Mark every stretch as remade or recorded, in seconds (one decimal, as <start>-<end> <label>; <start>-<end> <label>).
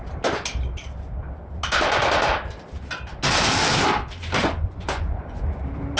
0.0-4.4 recorded; 4.4-5.6 remade; 5.6-6.0 recorded